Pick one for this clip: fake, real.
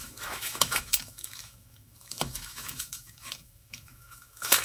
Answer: fake